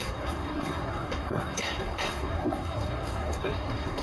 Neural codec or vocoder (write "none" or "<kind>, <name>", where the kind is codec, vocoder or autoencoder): codec, SNAC